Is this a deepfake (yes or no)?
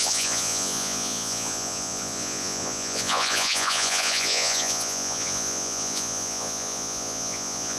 yes